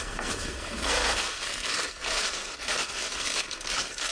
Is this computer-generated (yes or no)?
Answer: yes